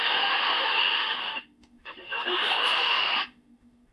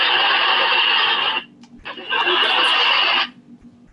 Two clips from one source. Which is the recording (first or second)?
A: second